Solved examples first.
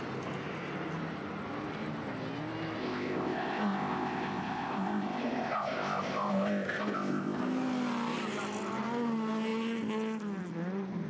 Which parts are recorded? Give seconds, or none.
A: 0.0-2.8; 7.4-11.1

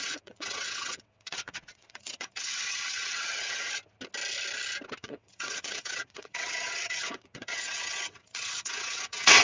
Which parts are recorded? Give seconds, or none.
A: 3.8-5.0

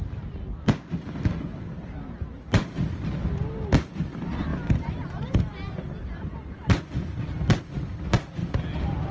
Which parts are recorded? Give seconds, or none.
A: 0.0-9.1

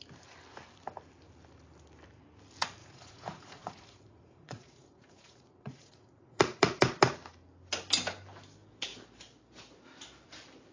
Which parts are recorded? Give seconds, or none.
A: 0.0-2.8; 6.8-10.7

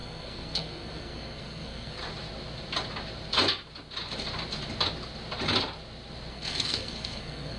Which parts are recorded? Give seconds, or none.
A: 2.0-6.3

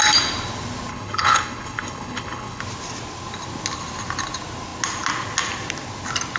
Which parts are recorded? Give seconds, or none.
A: 0.0-0.9; 2.6-6.4

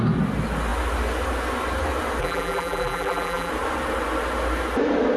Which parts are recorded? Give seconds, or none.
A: 0.0-2.2; 3.5-5.2